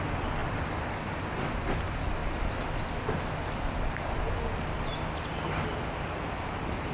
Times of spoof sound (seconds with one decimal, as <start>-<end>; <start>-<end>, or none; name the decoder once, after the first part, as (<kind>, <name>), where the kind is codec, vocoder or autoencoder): none